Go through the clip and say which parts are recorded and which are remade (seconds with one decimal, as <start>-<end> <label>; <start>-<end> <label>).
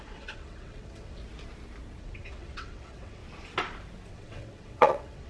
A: 0.0-1.2 remade; 1.2-2.0 recorded; 2.0-3.2 remade; 3.2-4.1 recorded; 4.1-5.3 remade